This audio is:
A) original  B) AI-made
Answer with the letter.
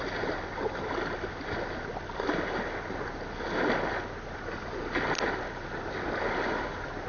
A